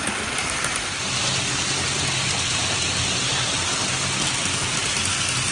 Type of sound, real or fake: real